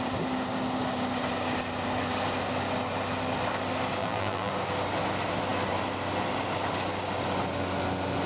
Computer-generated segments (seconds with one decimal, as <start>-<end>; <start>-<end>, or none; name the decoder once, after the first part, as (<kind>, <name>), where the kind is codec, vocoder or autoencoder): 4.0-4.5 (vocoder, BigVGAN v2)